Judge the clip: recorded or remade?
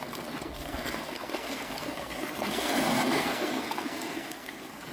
remade